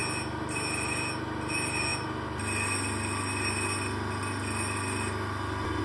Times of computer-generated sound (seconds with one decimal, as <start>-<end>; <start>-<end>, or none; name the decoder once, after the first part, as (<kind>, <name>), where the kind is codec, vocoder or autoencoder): none